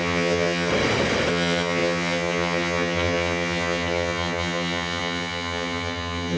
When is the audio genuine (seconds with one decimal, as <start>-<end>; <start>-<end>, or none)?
0.7-1.3